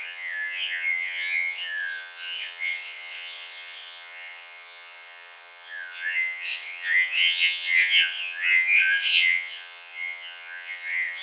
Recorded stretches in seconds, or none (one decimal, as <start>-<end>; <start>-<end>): none